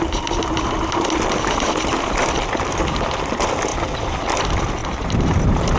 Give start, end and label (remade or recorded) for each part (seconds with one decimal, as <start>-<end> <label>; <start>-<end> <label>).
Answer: 0.0-3.7 recorded; 3.7-4.2 remade; 4.2-4.8 recorded; 4.8-5.8 remade